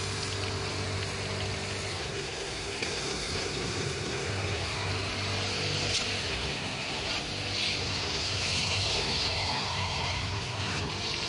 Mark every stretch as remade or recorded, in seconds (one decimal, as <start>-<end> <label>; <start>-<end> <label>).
0.0-1.9 recorded; 1.9-4.9 remade; 4.9-6.2 recorded; 6.2-7.1 remade; 7.1-7.8 recorded; 7.8-10.9 remade; 10.9-11.3 recorded